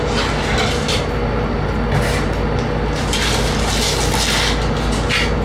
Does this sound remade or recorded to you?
recorded